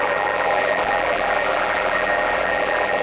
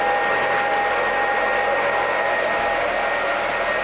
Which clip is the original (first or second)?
second